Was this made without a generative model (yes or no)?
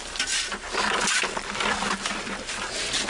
yes